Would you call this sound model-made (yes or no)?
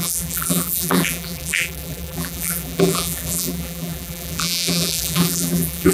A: yes